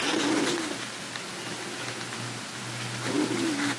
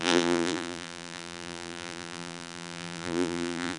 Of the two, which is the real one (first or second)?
first